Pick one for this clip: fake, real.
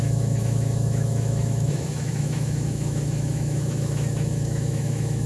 fake